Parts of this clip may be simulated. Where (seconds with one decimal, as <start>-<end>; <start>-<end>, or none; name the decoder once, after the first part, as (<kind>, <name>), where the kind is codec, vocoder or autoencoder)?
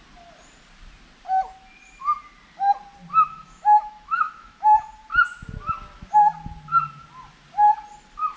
3.3-4.9 (autoencoder, DAC-VAE)